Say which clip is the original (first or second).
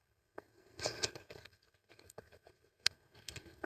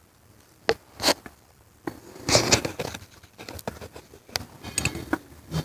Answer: second